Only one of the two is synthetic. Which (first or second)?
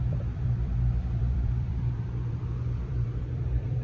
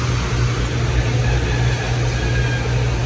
first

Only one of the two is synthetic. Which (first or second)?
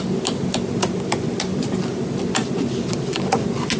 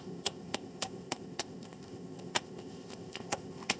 second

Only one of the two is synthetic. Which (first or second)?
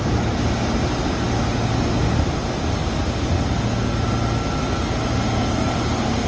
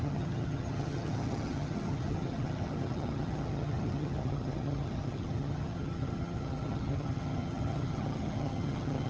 second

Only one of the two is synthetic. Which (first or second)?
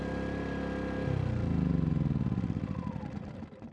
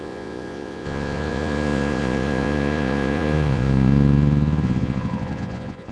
second